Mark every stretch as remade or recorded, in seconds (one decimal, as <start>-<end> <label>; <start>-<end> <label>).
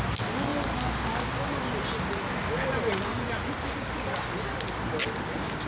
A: 0.0-5.7 recorded